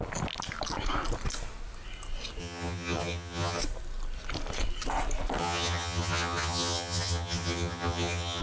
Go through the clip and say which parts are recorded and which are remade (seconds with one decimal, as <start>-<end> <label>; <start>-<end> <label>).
0.0-2.4 recorded; 2.4-3.6 remade; 3.6-5.4 recorded; 5.4-8.4 remade